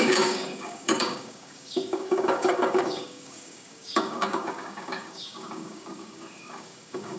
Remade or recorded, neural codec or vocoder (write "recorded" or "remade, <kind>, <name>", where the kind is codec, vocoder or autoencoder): remade, codec, DAC